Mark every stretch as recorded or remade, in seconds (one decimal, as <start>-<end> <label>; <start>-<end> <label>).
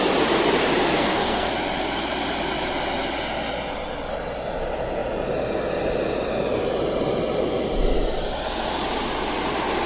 0.0-0.9 recorded; 0.9-1.5 remade; 1.5-9.9 recorded